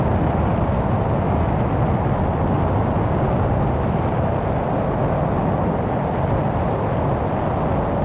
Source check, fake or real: real